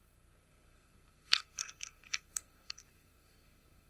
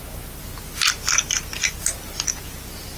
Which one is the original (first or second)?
second